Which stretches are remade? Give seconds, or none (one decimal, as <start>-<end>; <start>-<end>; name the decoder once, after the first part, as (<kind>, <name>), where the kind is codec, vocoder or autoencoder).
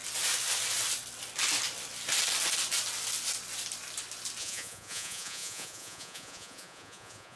4.4-7.4 (vocoder, Vocos)